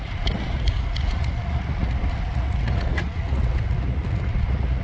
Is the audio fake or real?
fake